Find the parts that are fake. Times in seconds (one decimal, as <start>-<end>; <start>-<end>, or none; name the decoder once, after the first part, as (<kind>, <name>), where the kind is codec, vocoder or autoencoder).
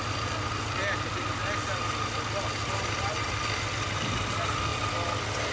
none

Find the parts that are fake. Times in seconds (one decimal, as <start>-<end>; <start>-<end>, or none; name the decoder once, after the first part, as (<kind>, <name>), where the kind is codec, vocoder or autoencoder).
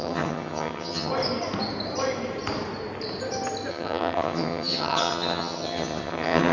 0.0-1.1 (vocoder, HiFi-GAN); 3.7-6.5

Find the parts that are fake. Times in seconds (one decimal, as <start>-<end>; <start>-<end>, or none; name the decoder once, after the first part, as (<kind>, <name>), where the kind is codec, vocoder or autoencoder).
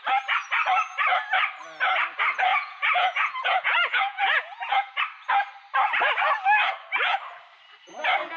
2.5-5.0 (vocoder, Vocos)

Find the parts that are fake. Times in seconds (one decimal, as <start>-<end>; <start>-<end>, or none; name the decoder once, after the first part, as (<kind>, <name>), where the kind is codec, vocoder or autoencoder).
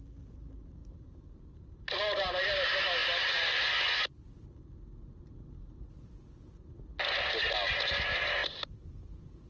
0.8-2.3 (vocoder, BigVGAN v2); 8.4-9.5